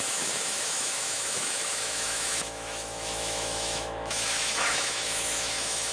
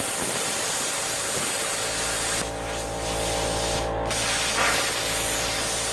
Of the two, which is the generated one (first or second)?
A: first